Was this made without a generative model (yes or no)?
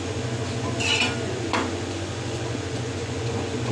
no